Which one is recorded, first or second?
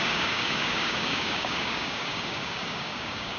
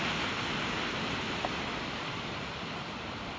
second